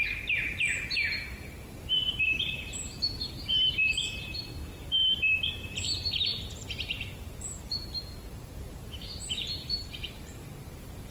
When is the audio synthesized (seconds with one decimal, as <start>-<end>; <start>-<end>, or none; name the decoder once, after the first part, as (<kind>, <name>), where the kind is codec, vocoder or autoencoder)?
0.0-4.4 (vocoder, BigVGAN v2); 5.5-11.1

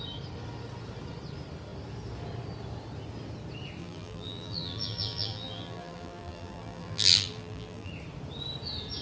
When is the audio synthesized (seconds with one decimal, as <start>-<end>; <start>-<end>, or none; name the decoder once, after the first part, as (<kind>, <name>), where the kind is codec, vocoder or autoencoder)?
3.8-7.9 (vocoder, BigVGAN v2)

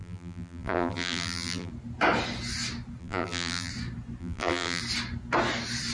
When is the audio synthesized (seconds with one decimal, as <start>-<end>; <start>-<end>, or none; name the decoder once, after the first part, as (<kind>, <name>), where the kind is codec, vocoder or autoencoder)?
0.0-1.7 (vocoder, BigVGAN v2); 3.0-3.7; 4.2-4.8

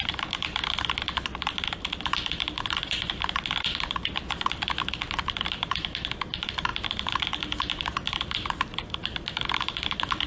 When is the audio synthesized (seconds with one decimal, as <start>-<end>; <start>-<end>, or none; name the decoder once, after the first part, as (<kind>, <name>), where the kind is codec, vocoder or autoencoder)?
0.0-10.3 (vocoder, BigVGAN v2)

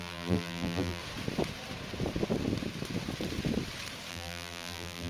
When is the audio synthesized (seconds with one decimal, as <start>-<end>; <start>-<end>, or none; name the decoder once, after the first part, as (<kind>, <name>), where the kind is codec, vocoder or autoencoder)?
0.0-1.0 (vocoder, BigVGAN v2); 4.1-5.1

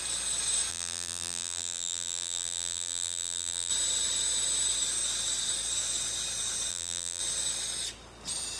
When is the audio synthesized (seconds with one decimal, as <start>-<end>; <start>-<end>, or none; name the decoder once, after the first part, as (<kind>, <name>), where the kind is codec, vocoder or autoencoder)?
0.7-3.7 (vocoder, BigVGAN v2); 6.7-7.2